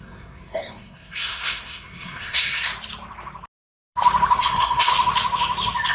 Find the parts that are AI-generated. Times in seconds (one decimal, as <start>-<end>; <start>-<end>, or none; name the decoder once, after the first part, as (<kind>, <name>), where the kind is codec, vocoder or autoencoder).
0.0-2.7 (codec, SNAC); 4.4-4.9